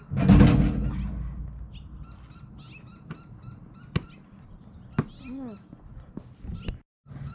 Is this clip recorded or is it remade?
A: recorded